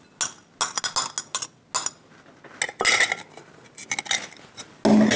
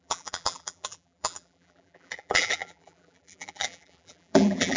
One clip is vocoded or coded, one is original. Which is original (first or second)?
first